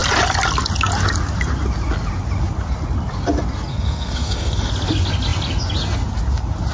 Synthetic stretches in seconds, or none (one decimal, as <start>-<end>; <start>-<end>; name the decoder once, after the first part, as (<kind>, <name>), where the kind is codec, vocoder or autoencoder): 3.7-4.7 (codec, SNAC)